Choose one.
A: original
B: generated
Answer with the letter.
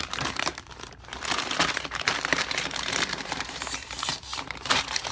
B